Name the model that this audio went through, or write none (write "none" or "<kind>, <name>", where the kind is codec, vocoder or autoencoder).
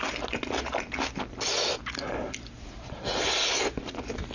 none